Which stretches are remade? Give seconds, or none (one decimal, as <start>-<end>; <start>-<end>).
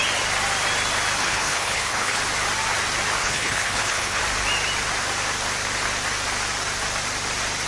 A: 1.2-2.2; 3.2-4.2